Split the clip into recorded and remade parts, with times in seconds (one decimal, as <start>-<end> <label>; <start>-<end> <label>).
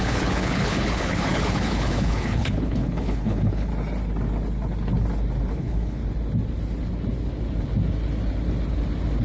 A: 0.0-3.7 remade; 3.7-5.5 recorded; 5.5-6.0 remade; 6.0-9.2 recorded